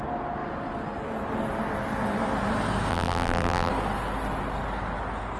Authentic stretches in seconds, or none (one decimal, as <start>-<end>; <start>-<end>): 0.0-2.9; 3.7-5.4